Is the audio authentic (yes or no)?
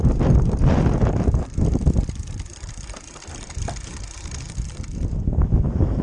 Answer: yes